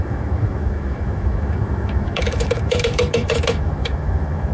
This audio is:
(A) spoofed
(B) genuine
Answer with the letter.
A